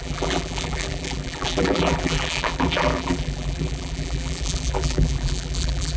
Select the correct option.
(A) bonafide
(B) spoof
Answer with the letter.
B